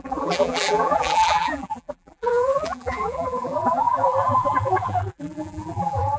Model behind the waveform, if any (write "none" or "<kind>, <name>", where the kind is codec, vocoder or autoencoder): vocoder, BigVGAN v2